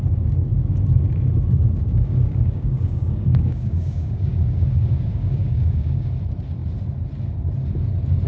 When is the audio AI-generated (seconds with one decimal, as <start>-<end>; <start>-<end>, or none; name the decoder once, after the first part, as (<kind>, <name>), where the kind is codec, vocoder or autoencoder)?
1.8-6.1 (codec, DAC)